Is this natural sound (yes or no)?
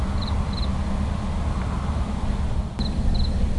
yes